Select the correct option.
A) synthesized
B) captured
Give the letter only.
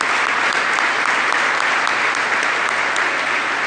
B